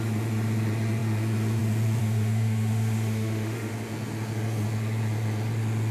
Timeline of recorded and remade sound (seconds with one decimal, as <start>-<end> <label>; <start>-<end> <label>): 0.0-2.0 recorded; 2.0-3.7 remade; 3.7-5.9 recorded